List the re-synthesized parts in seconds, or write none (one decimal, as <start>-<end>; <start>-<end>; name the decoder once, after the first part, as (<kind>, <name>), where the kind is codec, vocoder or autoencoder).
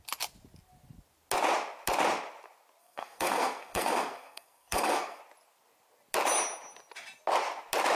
2.8-5.2 (codec, SNAC)